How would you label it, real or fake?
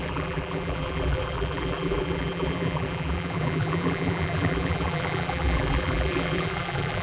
fake